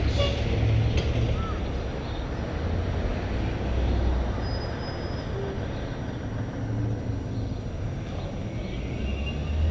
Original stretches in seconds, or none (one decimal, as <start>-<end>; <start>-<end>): 0.0-9.7